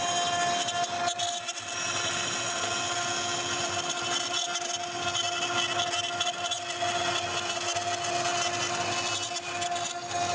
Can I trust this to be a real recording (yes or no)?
yes